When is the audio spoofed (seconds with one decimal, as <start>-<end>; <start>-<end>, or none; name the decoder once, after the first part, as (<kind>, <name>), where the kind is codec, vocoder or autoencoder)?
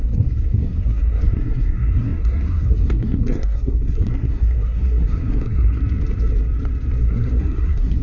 0.0-5.8 (codec, SNAC); 7.0-8.0